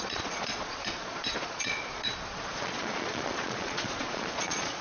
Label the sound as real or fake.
fake